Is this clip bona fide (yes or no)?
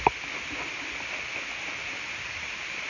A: yes